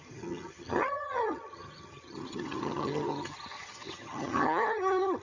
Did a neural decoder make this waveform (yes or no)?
yes